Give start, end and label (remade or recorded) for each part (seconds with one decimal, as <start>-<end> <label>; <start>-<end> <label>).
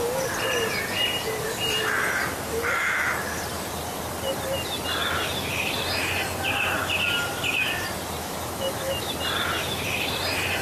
0.0-8.2 recorded; 8.2-9.1 remade; 9.1-10.6 recorded